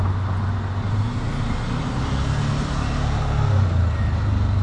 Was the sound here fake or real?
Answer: real